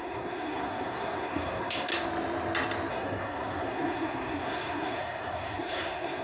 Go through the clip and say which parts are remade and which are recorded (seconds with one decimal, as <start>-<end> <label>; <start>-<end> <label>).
0.0-1.9 remade; 1.9-2.9 recorded; 2.9-6.2 remade